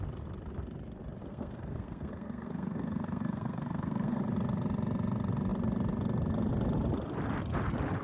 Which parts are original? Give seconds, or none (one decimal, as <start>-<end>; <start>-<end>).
0.0-1.2; 4.2-8.0